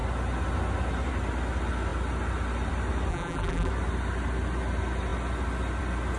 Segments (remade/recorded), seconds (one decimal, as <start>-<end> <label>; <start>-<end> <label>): 0.0-3.1 recorded; 3.1-3.7 remade; 3.7-6.2 recorded